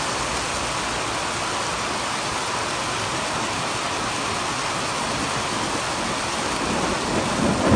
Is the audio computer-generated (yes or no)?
no